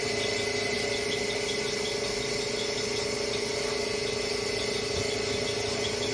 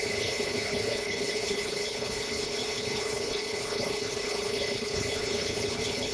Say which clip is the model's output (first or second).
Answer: second